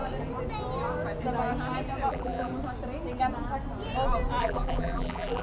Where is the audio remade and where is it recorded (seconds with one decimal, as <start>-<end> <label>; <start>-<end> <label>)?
0.0-2.1 recorded; 2.1-2.5 remade; 2.5-4.4 recorded; 4.4-5.4 remade